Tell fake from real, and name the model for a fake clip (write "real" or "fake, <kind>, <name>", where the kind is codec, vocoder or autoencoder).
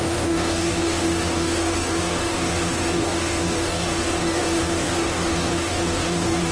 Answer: fake, codec, DAC